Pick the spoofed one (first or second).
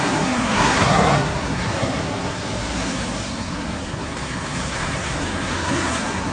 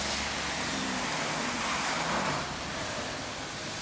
first